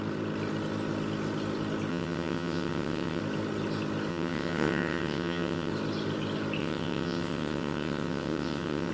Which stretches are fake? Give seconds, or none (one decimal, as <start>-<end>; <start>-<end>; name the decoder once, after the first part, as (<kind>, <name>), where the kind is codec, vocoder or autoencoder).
1.9-3.2 (vocoder, WaveNeXt); 4.1-5.7; 6.6-8.9